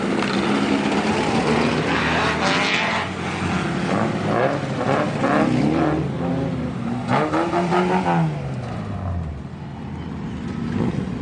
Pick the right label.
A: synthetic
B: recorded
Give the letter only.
B